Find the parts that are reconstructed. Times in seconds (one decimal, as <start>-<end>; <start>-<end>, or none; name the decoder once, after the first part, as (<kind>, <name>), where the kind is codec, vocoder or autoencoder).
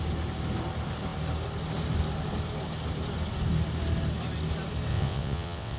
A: 4.9-5.8 (vocoder, WaveNeXt)